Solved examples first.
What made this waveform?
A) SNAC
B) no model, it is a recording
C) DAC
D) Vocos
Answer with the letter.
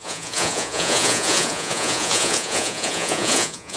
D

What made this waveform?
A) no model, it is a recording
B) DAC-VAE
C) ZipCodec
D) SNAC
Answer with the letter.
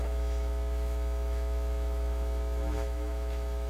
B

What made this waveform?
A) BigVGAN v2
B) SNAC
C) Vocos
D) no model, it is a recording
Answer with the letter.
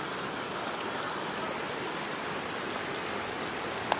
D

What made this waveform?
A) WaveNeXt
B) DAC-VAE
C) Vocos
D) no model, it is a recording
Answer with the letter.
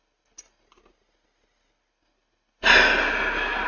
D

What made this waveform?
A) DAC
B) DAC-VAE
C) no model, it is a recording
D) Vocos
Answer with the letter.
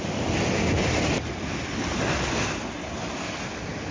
C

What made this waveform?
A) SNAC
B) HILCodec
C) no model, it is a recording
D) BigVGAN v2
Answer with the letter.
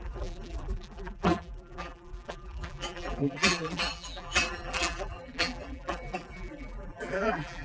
D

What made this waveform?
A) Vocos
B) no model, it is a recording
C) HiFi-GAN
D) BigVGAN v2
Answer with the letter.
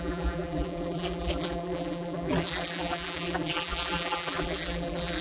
D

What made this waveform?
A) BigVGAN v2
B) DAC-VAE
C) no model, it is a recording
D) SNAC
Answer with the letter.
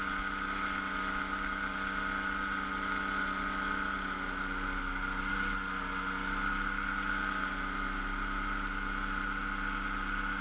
C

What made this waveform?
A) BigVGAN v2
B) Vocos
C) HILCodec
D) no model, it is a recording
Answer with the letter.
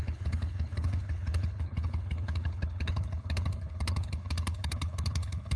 C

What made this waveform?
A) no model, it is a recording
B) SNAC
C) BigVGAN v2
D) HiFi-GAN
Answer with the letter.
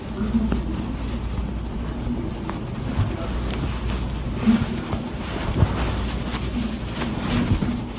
A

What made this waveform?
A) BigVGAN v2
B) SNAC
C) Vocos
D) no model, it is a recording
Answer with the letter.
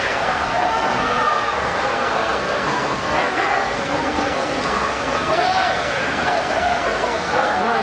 B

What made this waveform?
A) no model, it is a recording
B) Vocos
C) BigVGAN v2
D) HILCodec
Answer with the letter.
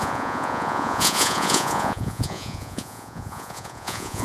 B